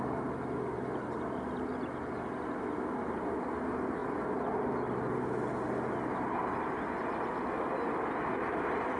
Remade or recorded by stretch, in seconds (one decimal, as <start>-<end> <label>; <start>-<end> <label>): 0.0-9.0 recorded